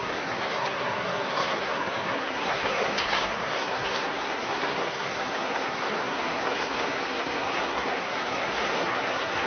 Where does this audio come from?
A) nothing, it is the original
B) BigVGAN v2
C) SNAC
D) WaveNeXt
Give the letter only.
C